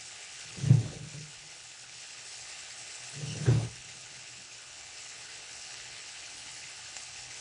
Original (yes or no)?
no